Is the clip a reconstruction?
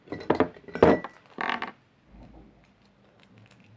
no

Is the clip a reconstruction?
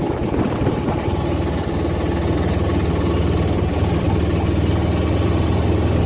no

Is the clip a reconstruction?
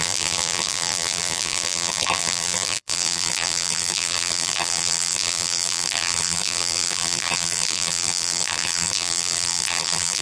yes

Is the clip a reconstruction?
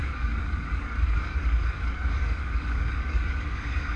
yes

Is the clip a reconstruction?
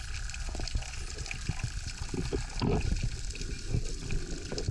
no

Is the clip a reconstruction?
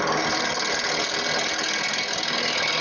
no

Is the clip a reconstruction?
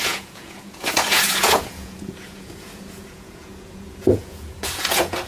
yes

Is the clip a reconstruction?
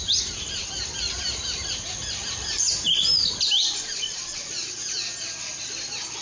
yes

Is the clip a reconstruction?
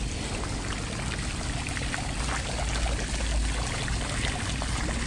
no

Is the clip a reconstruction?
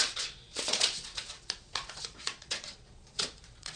yes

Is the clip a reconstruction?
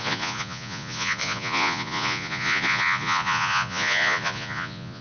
yes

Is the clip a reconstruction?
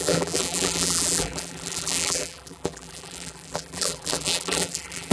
yes